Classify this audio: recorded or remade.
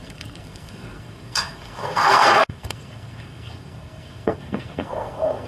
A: remade